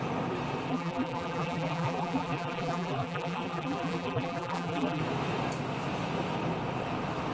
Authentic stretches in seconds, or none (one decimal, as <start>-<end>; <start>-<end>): 0.0-0.7; 5.0-7.3